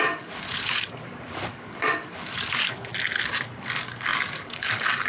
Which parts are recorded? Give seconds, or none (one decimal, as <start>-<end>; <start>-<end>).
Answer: 2.9-3.6